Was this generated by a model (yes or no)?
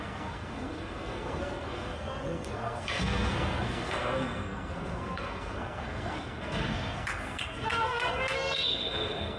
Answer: yes